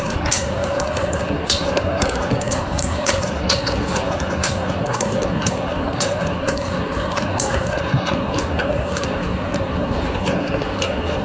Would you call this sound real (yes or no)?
no